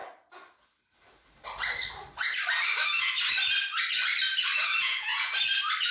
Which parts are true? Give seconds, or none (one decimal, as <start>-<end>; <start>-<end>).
0.0-4.8; 5.3-5.9